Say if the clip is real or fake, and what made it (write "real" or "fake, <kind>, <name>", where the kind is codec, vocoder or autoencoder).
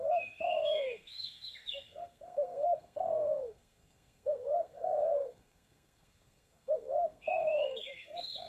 fake, codec, SNAC